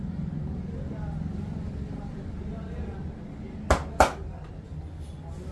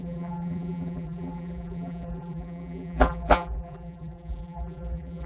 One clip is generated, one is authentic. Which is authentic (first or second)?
first